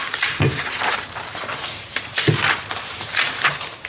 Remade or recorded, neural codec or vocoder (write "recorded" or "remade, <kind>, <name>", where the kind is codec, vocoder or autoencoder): recorded